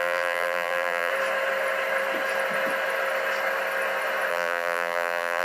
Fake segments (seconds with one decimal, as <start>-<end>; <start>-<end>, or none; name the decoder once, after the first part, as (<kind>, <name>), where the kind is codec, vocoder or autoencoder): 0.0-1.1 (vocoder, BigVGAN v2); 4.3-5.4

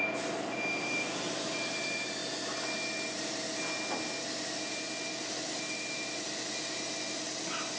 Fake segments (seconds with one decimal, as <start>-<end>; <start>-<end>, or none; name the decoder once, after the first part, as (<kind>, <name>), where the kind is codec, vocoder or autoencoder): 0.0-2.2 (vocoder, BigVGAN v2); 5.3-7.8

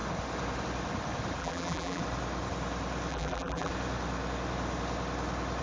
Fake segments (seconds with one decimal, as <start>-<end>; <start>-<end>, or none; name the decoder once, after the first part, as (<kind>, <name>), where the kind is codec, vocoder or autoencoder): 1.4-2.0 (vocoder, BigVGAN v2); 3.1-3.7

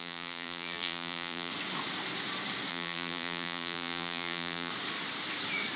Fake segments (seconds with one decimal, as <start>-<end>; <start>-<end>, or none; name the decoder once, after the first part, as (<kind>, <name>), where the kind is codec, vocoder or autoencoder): 0.0-1.5 (vocoder, BigVGAN v2); 2.7-4.7

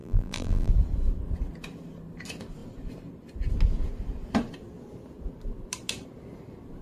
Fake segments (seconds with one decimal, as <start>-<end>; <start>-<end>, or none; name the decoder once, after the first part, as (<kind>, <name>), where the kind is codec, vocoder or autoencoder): 0.0-0.7 (vocoder, BigVGAN v2)

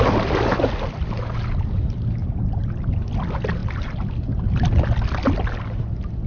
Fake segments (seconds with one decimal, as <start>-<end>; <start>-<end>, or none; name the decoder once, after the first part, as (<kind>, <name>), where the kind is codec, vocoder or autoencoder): 2.2-2.7 (vocoder, BigVGAN v2)

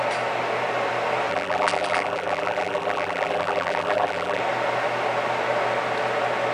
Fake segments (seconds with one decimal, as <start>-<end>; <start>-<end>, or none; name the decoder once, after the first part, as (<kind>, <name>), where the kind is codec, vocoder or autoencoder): 1.3-4.4 (vocoder, BigVGAN v2)

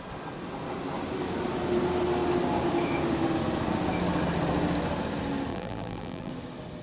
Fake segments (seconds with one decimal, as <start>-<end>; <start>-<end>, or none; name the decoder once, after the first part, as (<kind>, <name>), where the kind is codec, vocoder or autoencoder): 5.5-6.3 (vocoder, BigVGAN v2)